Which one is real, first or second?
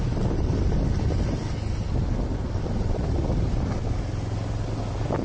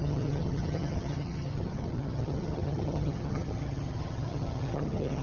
first